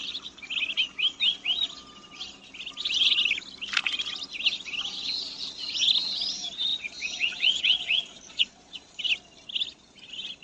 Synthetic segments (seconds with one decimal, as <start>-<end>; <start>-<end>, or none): 6.7-9.0